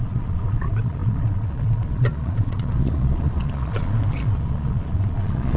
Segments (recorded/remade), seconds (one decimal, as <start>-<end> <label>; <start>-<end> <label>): 0.0-5.6 remade

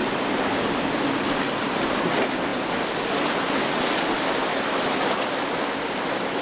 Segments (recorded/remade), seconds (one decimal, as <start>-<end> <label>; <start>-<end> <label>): 0.0-6.4 recorded

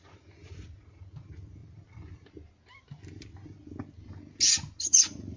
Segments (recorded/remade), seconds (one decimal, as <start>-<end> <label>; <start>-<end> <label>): 0.0-1.6 remade; 1.6-4.8 recorded; 4.8-5.4 remade

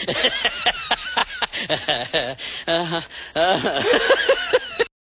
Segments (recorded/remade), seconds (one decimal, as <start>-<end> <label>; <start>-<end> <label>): 0.0-5.0 recorded